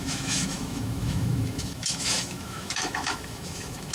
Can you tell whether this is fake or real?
fake